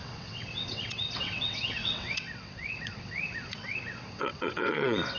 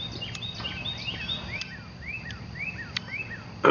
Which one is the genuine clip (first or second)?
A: second